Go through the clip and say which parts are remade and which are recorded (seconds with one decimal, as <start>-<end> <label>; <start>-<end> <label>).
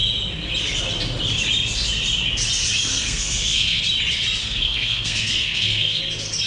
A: 0.0-2.9 recorded; 2.9-3.8 remade; 3.8-4.4 recorded; 4.4-6.0 remade; 6.0-6.5 recorded